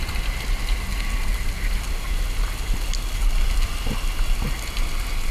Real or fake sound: real